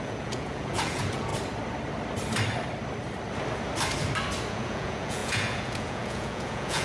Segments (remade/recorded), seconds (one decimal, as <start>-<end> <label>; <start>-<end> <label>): 0.0-1.3 remade; 1.3-4.5 recorded; 4.5-6.8 remade